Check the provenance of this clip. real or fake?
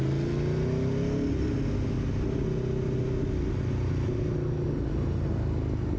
real